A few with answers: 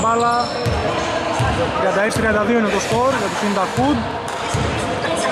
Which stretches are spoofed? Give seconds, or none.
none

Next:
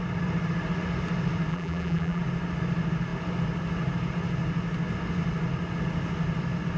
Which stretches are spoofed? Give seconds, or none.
1.5-2.2 (vocoder, BigVGAN v2)

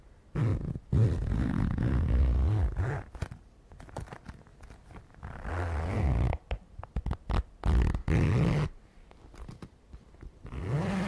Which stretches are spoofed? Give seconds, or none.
none